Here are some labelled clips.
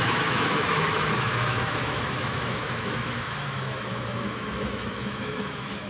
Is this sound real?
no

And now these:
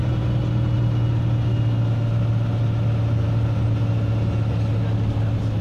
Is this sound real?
yes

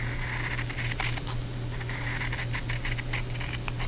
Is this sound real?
yes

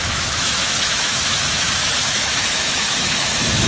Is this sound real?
no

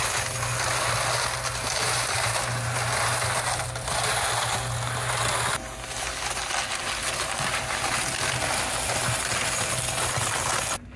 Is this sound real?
yes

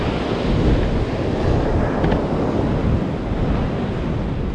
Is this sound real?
yes